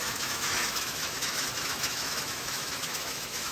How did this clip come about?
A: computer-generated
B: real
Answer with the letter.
A